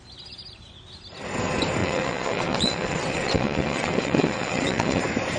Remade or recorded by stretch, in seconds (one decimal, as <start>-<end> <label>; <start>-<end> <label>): 0.0-1.8 recorded; 1.8-5.0 remade; 5.0-5.4 recorded